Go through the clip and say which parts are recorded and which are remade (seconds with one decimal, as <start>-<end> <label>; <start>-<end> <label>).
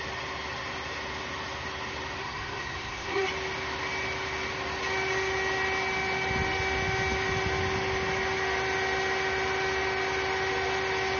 0.0-2.2 recorded; 2.2-3.2 remade; 3.2-11.2 recorded